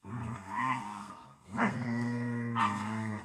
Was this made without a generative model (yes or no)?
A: no